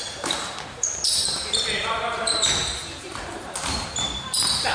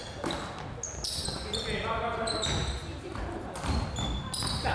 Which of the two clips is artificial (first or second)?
first